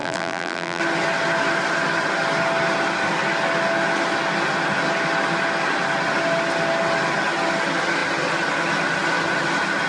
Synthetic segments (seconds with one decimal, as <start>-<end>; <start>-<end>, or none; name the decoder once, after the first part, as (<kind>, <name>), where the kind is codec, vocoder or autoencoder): 0.0-0.8 (vocoder, BigVGAN v2)